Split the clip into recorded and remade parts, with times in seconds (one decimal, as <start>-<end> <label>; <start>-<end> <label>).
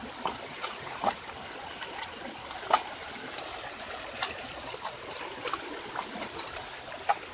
0.0-0.5 recorded; 0.5-1.1 remade; 1.1-7.3 recorded